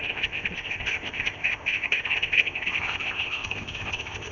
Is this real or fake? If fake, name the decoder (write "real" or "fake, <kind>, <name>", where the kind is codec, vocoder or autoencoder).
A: fake, codec, ZipCodec